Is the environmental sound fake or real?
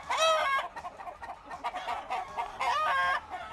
real